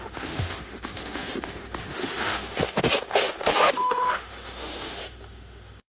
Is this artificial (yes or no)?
yes